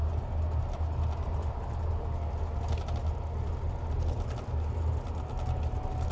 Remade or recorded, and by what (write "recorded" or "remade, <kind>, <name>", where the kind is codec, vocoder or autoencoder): recorded